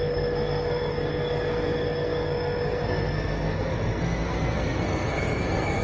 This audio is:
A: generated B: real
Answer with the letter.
A